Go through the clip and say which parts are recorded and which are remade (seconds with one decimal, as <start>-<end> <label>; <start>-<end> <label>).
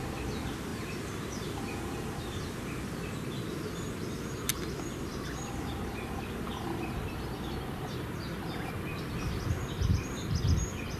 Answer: 0.0-11.0 recorded